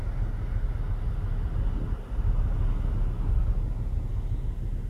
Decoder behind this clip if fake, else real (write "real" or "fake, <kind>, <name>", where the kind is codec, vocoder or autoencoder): real